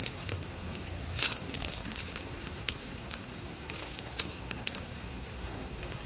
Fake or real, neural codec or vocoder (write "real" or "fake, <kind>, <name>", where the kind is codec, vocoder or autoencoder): fake, codec, SNAC